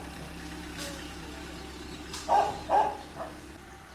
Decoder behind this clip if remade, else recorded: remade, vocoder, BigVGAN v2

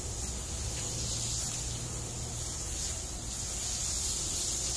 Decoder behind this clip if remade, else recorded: recorded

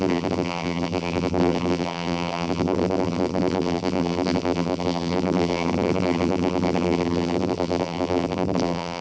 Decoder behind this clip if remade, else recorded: remade, vocoder, BigVGAN v2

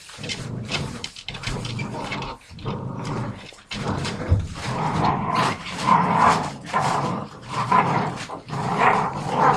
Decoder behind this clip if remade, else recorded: remade, vocoder, BigVGAN v2